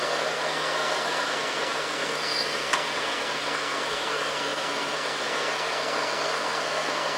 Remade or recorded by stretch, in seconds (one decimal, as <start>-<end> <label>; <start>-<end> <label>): 0.0-7.2 remade